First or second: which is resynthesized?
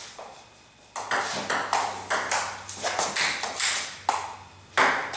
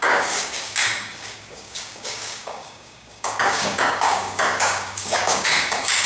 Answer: second